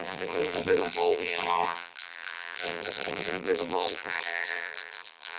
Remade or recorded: remade